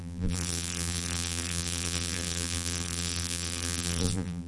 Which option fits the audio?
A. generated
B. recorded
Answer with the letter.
A